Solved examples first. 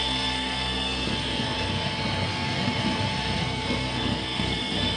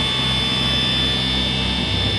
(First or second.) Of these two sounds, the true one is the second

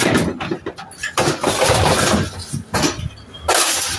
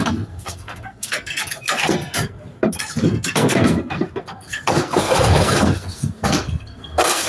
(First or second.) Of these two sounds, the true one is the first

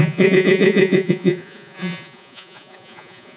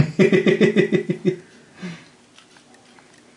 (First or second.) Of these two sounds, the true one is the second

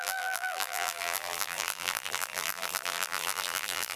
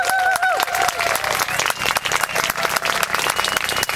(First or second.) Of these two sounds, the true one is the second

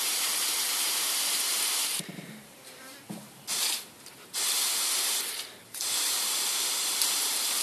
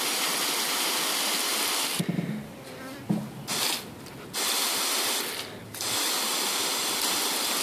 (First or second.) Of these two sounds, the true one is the second